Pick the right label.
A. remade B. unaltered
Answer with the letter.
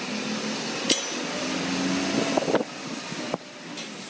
B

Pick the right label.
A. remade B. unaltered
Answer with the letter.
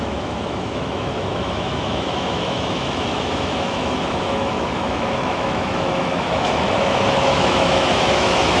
A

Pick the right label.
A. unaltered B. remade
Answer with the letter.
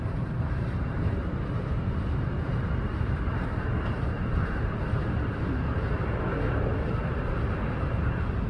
B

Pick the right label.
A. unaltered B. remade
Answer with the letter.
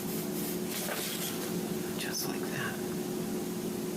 A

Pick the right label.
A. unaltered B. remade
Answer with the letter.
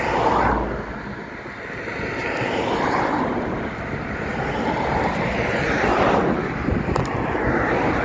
A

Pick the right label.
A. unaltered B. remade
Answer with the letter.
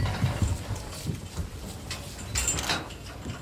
B